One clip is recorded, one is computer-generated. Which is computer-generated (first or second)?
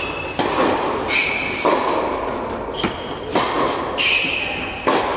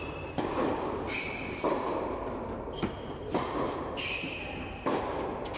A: second